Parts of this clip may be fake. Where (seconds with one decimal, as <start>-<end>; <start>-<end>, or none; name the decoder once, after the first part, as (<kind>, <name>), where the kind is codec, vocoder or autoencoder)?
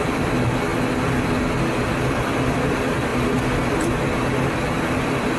0.0-0.7 (vocoder, BigVGAN v2); 2.0-3.1; 3.9-5.4